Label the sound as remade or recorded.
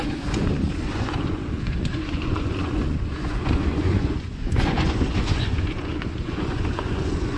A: remade